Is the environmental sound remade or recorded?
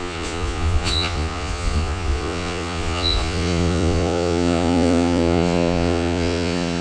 remade